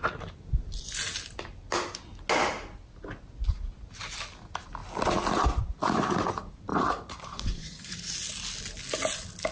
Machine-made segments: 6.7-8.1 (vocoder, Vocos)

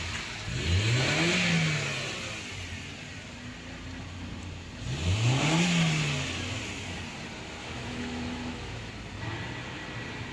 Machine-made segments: 7.6-8.9 (autoencoder, DAC-VAE)

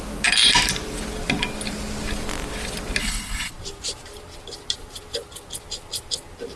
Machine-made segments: 3.0-3.5 (codec, HILCodec)

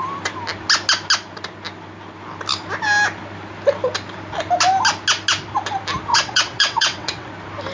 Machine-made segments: 6.1-7.3 (vocoder, WaveNeXt)

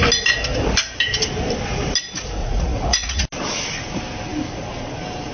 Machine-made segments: 2.4-3.2 (vocoder, Vocos)